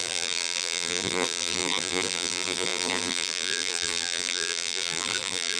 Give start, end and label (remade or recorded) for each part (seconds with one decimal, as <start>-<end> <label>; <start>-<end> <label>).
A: 0.0-5.6 remade